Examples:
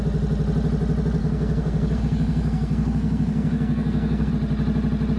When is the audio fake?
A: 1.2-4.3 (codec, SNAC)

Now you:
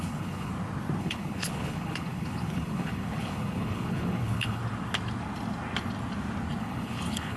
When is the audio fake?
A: 0.0-0.5 (codec, HILCodec); 1.0-4.6; 6.6-7.4

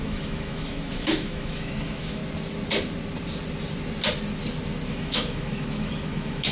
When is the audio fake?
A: 0.0-2.2 (autoencoder, DAC-VAE); 4.9-6.5

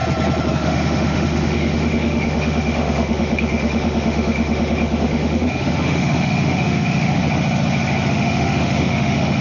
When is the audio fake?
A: 0.5-7.2 (autoencoder, DAC-VAE); 8.1-9.4